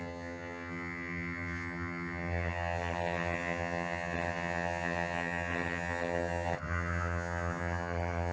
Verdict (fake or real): fake